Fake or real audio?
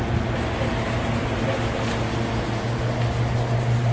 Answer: real